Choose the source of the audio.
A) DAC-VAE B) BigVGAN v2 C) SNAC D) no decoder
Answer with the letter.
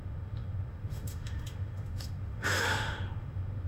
A